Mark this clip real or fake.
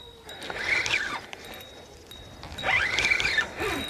real